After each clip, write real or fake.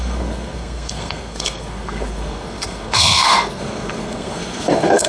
fake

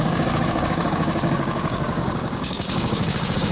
fake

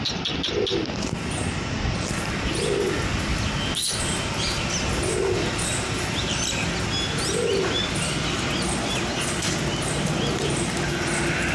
real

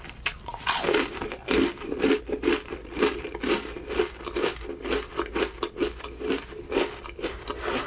real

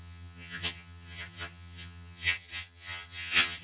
fake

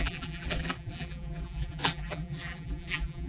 fake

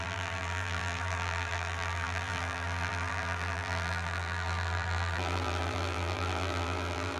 fake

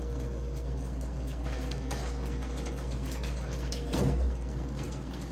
fake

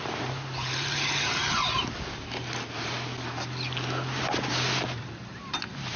real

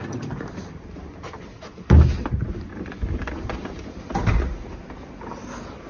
real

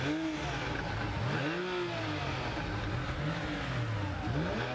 real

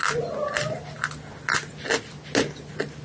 real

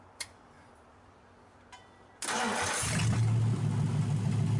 real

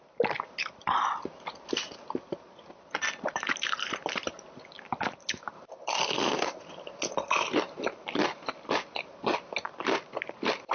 real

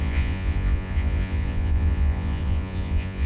fake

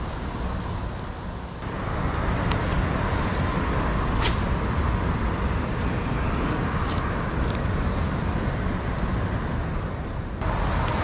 real